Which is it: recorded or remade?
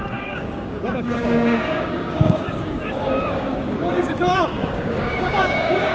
remade